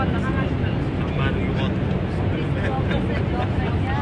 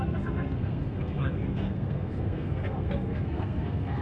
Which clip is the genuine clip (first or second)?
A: first